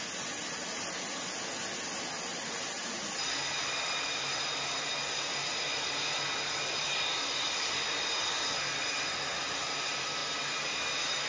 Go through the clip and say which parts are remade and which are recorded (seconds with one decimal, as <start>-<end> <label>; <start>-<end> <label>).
0.0-11.3 recorded